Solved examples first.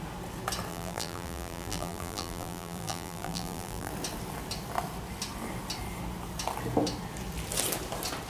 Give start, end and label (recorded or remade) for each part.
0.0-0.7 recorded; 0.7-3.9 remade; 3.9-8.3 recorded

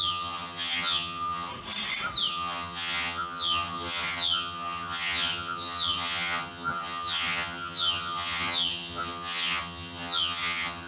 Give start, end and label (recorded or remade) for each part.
0.0-1.5 remade; 1.5-2.3 recorded; 2.3-10.9 remade